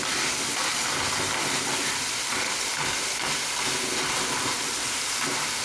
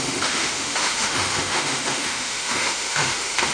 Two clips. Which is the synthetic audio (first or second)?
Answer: second